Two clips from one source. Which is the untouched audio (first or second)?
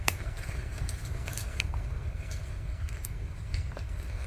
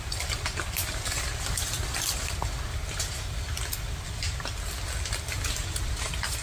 second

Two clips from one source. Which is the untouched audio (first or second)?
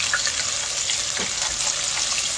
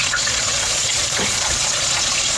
first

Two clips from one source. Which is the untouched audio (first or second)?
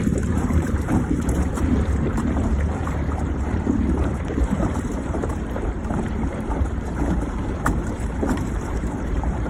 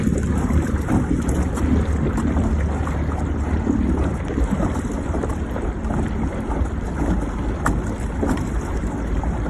second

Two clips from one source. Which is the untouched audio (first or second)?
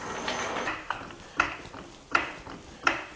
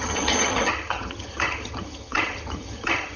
first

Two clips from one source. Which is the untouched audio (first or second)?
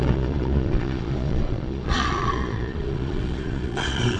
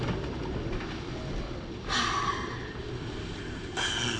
second